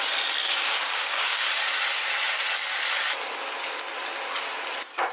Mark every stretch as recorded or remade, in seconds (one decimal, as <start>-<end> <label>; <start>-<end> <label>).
0.0-0.4 recorded; 0.4-1.4 remade; 1.4-5.1 recorded